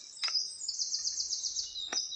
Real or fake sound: real